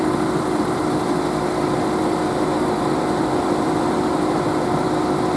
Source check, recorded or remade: remade